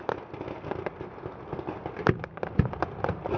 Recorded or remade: recorded